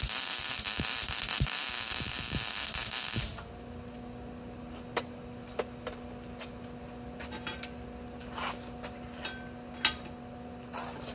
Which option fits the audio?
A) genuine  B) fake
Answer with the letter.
A